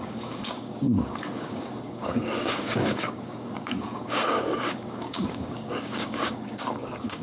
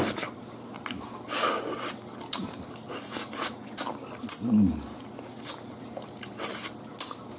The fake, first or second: first